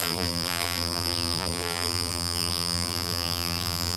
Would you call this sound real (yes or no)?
no